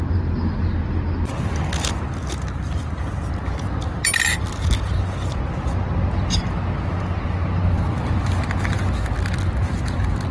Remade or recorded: recorded